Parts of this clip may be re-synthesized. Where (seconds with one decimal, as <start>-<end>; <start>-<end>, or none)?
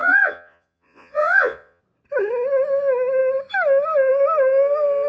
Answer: 0.0-1.8